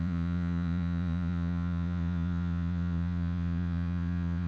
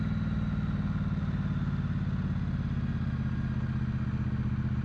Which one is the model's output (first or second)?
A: first